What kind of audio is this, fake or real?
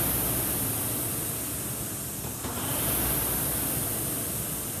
real